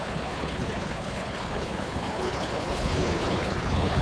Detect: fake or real fake